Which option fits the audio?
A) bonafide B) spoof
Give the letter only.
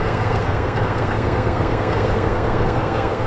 B